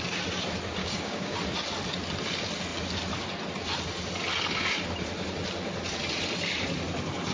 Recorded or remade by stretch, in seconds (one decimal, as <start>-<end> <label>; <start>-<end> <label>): 0.0-0.8 recorded; 0.8-1.4 remade; 1.4-7.3 recorded